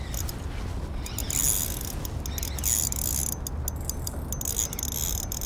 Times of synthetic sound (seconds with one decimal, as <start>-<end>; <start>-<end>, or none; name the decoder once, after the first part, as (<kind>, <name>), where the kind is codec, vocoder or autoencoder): none